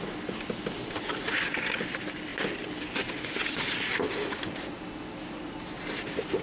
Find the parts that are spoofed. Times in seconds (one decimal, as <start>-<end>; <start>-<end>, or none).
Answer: none